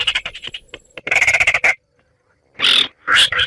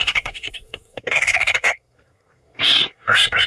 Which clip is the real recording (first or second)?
first